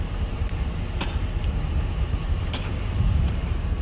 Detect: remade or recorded remade